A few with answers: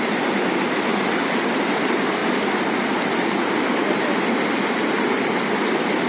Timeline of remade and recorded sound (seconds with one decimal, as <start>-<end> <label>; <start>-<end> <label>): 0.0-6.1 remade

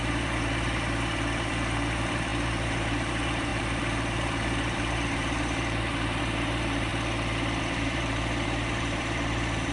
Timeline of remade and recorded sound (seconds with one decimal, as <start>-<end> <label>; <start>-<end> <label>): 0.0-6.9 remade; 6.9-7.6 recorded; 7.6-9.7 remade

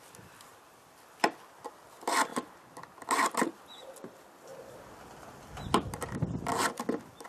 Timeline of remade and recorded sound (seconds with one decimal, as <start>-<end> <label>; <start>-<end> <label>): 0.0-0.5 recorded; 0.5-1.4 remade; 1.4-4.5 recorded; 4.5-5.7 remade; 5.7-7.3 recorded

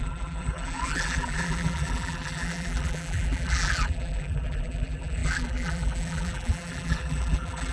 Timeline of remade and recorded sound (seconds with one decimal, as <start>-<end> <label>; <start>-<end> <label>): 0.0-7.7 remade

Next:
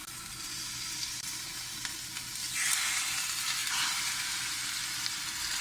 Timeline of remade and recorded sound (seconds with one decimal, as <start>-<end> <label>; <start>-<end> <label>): 0.0-3.6 recorded; 3.6-4.1 remade; 4.1-5.6 recorded

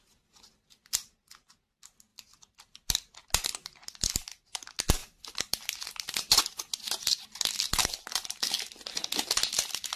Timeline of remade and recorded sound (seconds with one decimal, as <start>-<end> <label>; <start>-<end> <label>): 0.0-2.1 recorded; 2.1-3.1 remade; 3.1-5.0 recorded; 5.0-6.4 remade; 6.4-10.0 recorded